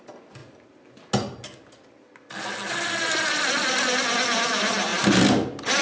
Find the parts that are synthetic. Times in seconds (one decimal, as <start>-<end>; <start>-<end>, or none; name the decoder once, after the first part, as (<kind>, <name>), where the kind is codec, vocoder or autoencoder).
none